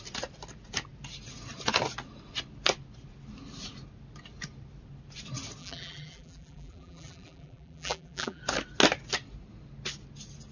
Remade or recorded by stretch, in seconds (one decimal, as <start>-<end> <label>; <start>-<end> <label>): 0.0-5.6 recorded; 5.6-8.4 remade; 8.4-10.5 recorded